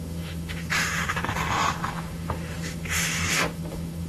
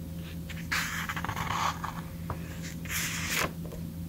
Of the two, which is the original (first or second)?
second